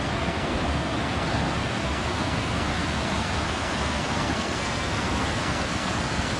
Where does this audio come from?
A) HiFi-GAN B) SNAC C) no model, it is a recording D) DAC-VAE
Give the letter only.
B